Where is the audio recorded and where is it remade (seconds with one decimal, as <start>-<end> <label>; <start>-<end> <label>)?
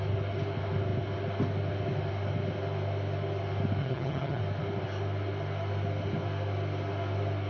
0.0-3.8 recorded; 3.8-4.4 remade; 4.4-7.5 recorded